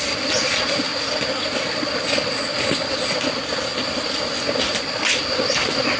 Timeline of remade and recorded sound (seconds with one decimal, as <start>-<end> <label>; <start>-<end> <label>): 0.0-6.0 recorded